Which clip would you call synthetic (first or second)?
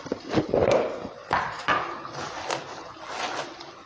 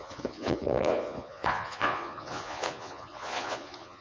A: second